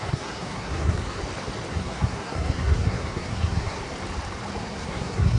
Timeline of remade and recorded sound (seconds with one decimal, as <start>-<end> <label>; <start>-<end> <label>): 0.0-1.2 remade; 1.2-1.7 recorded; 1.7-3.8 remade; 3.8-4.6 recorded; 4.6-5.4 remade